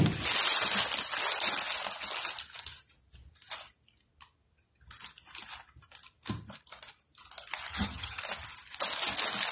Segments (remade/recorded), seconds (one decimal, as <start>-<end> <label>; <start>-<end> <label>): 0.0-7.7 recorded; 7.7-8.2 remade; 8.2-9.5 recorded